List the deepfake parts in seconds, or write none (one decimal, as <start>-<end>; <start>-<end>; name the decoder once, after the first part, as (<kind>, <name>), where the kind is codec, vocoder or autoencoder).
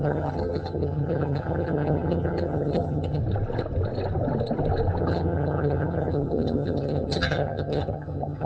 0.0-3.2 (vocoder, HiFi-GAN); 5.0-8.5